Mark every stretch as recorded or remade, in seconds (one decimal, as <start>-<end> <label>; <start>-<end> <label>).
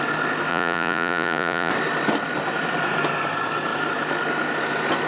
0.0-0.5 recorded; 0.5-1.7 remade; 1.7-5.1 recorded